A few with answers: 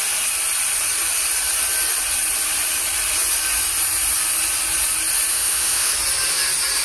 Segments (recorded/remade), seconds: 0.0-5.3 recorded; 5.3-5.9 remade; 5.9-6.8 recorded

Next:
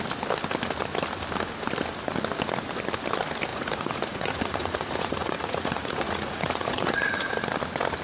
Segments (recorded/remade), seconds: 0.0-3.5 recorded; 3.5-7.1 remade; 7.1-8.0 recorded

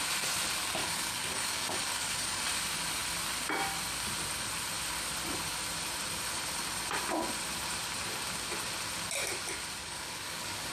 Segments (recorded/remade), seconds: 0.0-0.8 recorded; 0.8-2.4 remade; 2.4-9.8 recorded; 9.8-10.7 remade

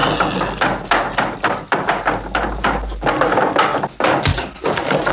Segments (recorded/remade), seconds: 0.0-4.3 recorded; 4.3-5.1 remade

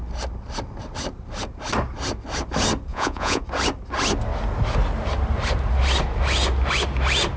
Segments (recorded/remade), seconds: 0.0-2.9 recorded; 2.9-3.4 remade; 3.4-7.4 recorded

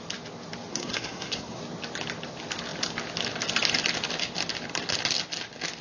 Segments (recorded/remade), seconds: 0.0-0.7 recorded; 0.7-1.6 remade; 1.6-5.8 recorded

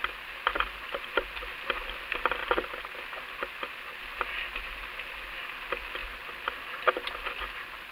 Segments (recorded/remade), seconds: 0.0-2.4 recorded; 2.4-4.0 remade; 4.0-6.0 recorded; 6.0-6.8 remade; 6.8-7.9 recorded